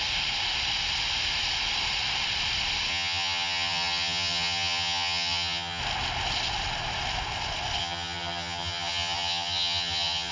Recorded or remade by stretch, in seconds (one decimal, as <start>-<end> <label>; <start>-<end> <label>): 0.0-2.9 recorded; 2.9-5.8 remade; 5.8-7.8 recorded; 7.8-10.3 remade